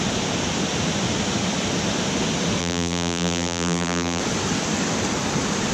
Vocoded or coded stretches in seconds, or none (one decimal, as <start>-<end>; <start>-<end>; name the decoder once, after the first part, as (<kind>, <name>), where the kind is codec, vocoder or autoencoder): 2.6-4.2 (vocoder, BigVGAN v2)